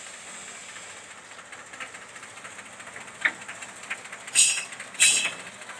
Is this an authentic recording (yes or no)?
yes